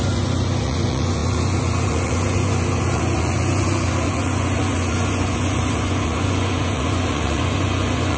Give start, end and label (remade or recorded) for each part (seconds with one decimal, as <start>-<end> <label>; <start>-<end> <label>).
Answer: 0.0-8.2 remade